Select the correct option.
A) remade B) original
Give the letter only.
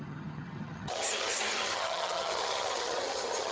A